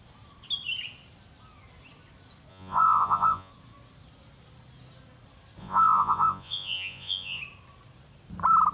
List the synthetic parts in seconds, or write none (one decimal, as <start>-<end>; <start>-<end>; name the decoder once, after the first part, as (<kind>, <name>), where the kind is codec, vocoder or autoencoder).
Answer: 2.5-3.5 (vocoder, Vocos); 5.6-7.4